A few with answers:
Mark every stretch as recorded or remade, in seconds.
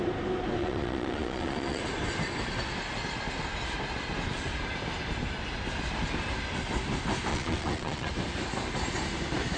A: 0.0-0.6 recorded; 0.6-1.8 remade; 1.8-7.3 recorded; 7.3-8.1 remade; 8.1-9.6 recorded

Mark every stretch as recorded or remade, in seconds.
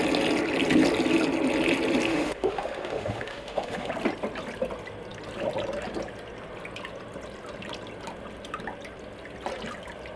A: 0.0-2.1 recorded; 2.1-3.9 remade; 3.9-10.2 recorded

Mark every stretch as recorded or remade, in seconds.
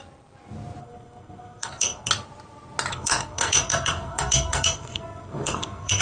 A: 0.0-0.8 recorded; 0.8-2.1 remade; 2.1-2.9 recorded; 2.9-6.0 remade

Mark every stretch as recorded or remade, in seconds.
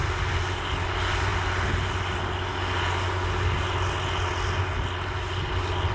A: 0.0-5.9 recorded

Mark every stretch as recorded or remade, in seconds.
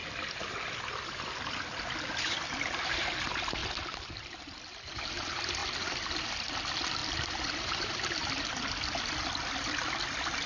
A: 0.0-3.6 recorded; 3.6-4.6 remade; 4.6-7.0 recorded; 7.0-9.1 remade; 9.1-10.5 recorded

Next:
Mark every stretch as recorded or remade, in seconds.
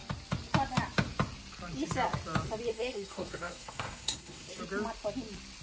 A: 0.0-2.7 recorded; 2.7-4.6 remade; 4.6-5.6 recorded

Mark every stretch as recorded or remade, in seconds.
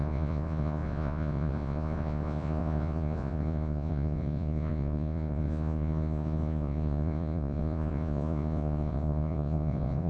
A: 0.0-10.1 remade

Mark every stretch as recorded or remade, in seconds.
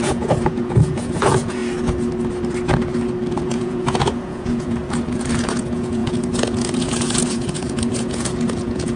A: 0.0-1.6 remade; 1.6-3.4 recorded; 3.4-4.8 remade; 4.8-5.4 recorded; 5.4-9.0 remade